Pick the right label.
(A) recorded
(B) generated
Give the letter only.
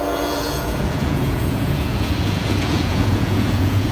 B